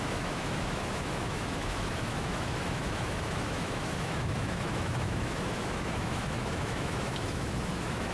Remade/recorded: remade